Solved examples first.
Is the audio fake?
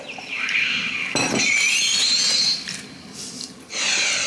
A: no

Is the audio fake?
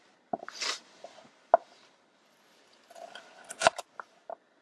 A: no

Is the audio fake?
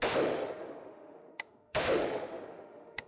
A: yes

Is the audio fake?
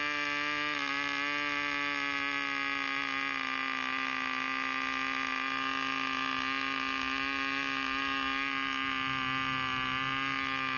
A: no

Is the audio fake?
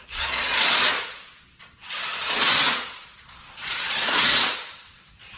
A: yes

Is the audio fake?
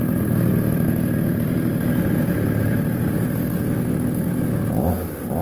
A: no